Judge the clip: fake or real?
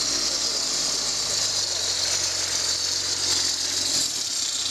real